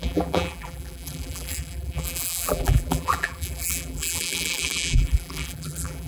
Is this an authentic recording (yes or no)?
no